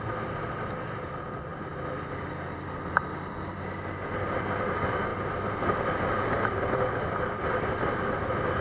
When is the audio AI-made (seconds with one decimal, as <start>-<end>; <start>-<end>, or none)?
none